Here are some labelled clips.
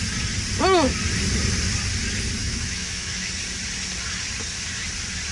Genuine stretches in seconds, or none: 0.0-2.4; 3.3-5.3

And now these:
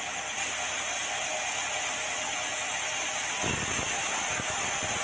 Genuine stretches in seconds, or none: 0.0-5.0

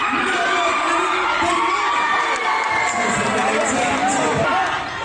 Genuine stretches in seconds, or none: 0.0-5.0